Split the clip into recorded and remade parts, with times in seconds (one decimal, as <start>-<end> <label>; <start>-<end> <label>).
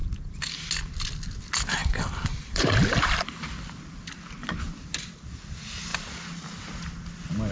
0.0-1.8 recorded; 1.8-4.1 remade; 4.1-7.5 recorded